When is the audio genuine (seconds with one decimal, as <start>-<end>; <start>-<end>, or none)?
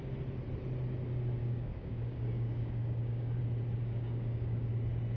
0.0-1.4; 3.4-3.8; 4.7-5.2